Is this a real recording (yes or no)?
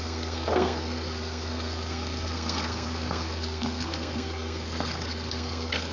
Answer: no